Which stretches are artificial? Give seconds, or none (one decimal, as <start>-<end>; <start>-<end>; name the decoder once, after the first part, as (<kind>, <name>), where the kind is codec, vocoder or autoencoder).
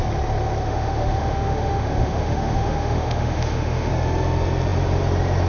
0.6-3.9 (autoencoder, DAC-VAE)